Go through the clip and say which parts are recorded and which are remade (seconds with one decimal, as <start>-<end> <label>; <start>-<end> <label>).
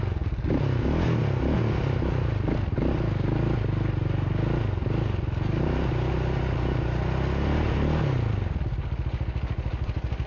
0.0-10.3 recorded